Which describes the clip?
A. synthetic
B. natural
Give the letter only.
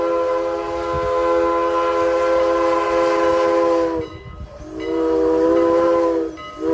B